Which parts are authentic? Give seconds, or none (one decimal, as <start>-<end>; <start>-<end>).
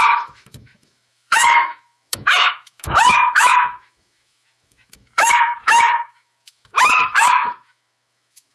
none